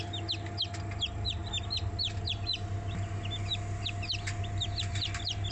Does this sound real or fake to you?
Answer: real